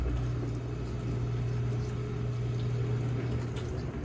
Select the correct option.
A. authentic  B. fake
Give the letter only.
A